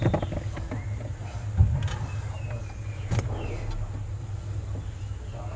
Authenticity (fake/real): real